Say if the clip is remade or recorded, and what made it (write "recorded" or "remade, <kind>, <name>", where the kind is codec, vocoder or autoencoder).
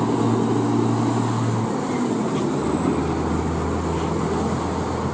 recorded